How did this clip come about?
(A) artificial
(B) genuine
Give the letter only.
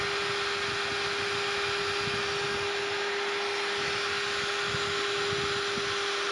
B